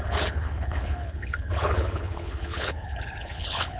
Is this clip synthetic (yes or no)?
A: yes